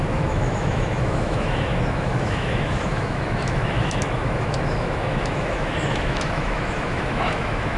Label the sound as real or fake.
fake